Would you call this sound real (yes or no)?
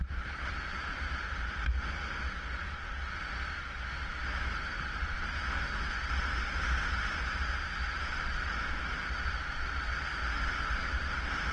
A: yes